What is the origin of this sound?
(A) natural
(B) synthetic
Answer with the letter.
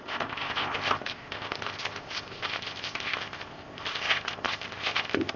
B